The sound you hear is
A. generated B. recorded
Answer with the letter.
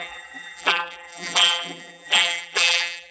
A